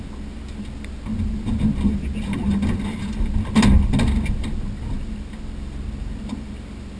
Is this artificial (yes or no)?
no